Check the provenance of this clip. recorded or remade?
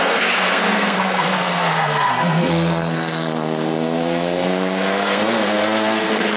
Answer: remade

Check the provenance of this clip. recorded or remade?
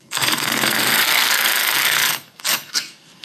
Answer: remade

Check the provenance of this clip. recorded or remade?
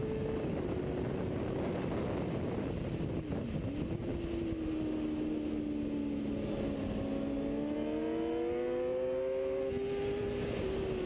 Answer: recorded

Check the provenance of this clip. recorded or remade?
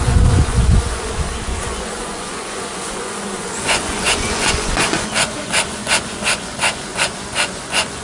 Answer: remade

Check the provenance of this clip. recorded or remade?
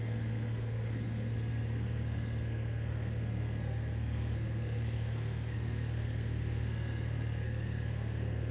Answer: remade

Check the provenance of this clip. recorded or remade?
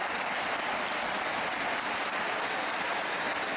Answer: recorded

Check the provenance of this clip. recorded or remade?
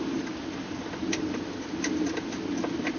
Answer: recorded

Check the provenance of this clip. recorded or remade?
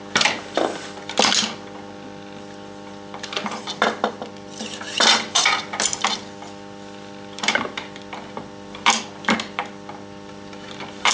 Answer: recorded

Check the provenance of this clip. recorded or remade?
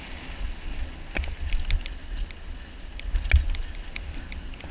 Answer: recorded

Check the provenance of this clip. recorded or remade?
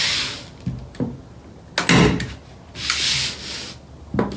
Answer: recorded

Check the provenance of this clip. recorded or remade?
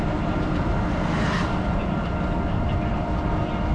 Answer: recorded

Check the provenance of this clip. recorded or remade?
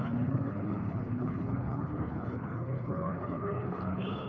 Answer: remade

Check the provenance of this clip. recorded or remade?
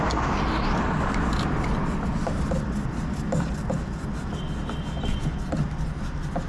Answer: recorded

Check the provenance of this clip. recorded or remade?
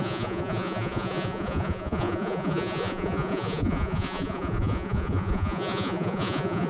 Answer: remade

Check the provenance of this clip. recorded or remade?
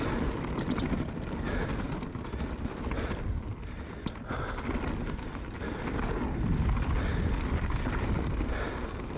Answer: recorded